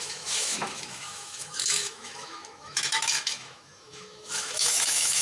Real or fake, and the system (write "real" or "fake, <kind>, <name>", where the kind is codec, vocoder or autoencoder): fake, autoencoder, DAC-VAE